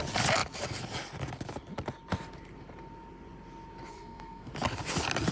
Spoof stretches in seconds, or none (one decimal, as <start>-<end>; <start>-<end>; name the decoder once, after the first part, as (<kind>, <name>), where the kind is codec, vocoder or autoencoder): 3.9-4.5 (codec, SNAC)